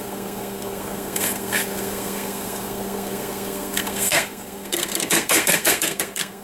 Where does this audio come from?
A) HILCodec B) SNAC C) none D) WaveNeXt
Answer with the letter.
B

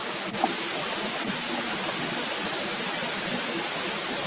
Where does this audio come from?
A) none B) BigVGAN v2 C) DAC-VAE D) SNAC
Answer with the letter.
A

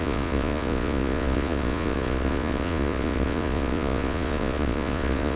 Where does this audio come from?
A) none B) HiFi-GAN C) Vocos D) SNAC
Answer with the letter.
C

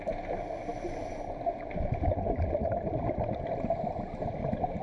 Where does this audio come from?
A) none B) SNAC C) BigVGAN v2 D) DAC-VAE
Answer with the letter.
A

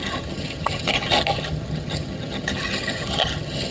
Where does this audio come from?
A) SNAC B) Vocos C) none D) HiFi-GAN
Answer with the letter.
D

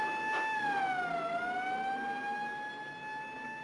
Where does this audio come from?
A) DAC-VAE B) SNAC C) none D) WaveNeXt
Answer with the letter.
C